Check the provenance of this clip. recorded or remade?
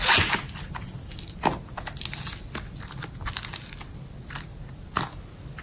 recorded